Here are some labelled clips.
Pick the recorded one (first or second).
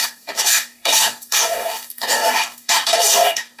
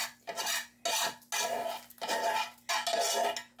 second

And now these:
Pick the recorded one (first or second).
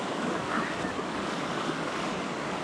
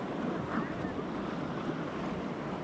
second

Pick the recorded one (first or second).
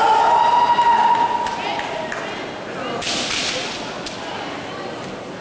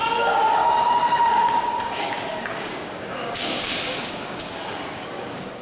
first